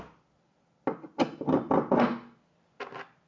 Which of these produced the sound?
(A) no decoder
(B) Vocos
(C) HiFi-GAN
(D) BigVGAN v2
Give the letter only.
A